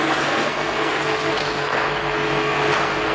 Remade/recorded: remade